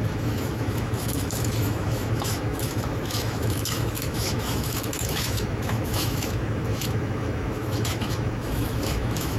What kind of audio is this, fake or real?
fake